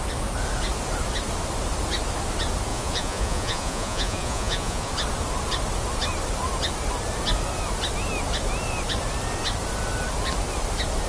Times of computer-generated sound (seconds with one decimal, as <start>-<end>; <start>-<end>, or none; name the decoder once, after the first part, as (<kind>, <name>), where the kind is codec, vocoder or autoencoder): 2.7-4.9 (vocoder, Vocos)